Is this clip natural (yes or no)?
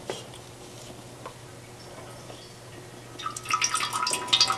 yes